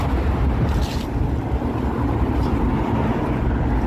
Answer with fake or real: real